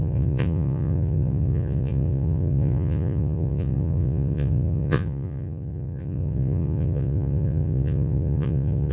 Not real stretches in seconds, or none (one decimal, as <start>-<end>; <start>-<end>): 0.0-8.9